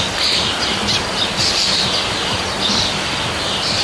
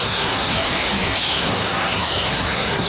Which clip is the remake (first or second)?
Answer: second